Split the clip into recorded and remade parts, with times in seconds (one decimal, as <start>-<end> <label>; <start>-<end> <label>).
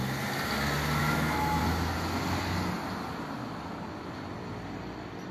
0.0-1.0 recorded; 1.0-1.6 remade; 1.6-5.3 recorded